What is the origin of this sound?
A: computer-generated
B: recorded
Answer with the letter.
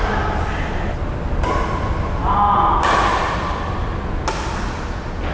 B